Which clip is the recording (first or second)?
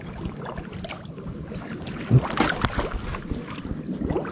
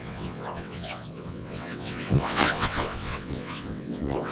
first